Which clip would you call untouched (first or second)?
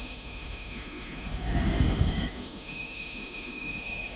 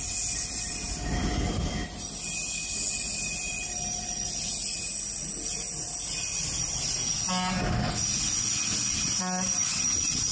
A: second